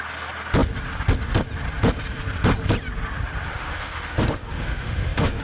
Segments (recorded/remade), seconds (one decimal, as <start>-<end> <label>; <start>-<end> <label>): 0.0-3.5 recorded; 3.5-5.4 remade